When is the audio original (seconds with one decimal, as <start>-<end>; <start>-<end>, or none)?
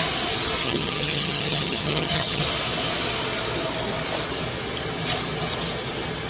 0.0-0.6; 2.4-6.3